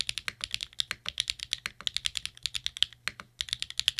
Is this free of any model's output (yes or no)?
yes